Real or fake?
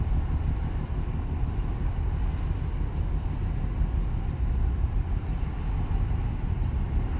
real